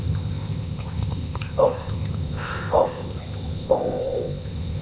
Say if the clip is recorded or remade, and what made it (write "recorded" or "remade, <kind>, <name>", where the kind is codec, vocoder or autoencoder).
remade, codec, ZipCodec